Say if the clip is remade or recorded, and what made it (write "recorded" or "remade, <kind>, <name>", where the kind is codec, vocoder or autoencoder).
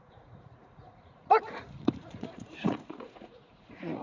remade, vocoder, Vocos